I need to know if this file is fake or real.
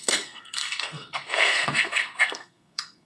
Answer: fake